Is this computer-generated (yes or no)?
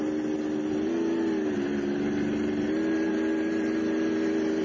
no